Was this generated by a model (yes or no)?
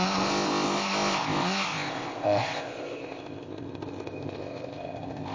yes